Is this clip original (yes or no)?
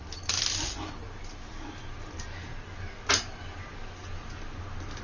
yes